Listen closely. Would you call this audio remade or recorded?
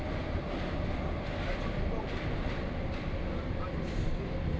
recorded